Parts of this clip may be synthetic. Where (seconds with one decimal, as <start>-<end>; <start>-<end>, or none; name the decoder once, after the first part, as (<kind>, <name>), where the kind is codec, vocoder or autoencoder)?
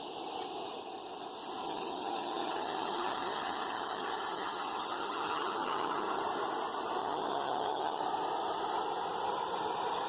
1.6-6.2 (vocoder, HiFi-GAN); 7.0-8.0